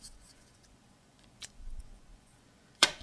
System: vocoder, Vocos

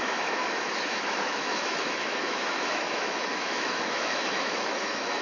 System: autoencoder, DAC-VAE